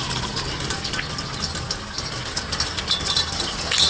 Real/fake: real